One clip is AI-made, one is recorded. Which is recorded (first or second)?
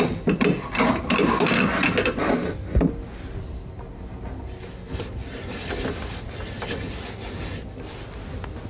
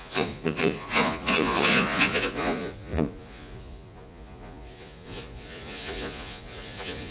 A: first